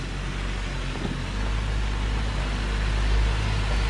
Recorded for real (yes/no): yes